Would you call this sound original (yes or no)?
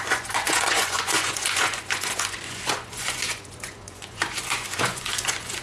no